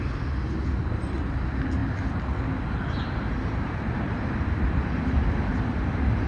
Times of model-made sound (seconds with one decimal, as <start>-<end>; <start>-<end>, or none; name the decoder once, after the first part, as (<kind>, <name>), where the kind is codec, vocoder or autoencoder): none